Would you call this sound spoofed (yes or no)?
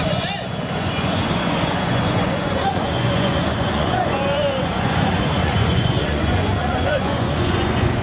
yes